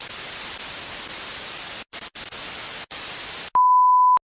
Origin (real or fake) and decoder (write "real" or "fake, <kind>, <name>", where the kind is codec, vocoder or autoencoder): real